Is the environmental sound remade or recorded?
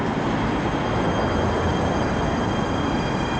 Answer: recorded